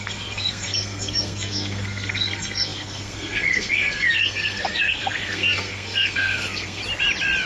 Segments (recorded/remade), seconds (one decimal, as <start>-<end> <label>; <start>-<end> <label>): 0.0-6.8 remade; 6.8-7.5 recorded